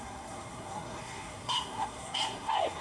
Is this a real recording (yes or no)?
no